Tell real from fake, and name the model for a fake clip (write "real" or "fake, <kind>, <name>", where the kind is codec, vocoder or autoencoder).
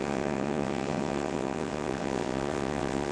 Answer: fake, vocoder, WaveNeXt